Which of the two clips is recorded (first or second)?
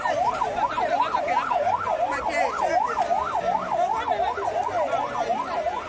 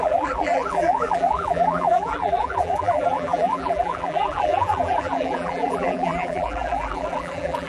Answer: first